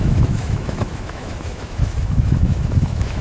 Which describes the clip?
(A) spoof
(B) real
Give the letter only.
A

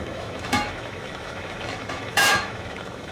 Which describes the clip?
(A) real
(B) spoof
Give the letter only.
B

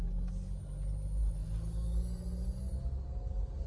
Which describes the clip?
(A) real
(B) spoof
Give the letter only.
A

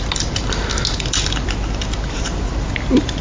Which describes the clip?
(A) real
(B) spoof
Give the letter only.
A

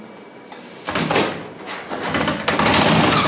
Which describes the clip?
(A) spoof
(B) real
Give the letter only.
B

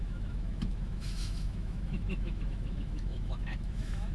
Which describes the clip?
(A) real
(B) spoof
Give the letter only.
B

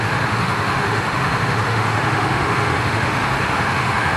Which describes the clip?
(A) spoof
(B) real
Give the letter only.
A